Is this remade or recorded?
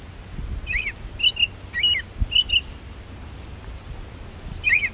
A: recorded